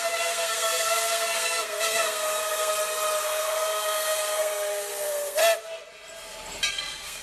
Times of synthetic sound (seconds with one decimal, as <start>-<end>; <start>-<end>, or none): 0.0-2.7; 3.2-5.4; 6.7-7.2

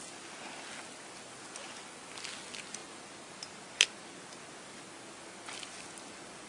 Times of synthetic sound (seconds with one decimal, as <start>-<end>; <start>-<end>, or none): none

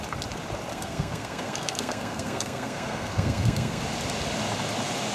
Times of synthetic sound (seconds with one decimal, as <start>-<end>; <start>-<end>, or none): 0.7-3.8

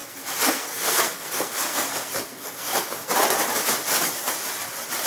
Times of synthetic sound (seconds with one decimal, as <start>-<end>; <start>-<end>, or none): 0.0-3.1

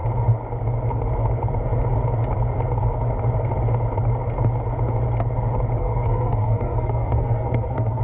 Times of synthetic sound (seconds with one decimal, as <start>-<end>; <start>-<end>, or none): 5.8-8.0